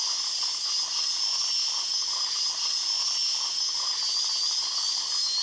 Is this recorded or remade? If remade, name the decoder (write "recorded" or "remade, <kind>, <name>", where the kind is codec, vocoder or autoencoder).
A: recorded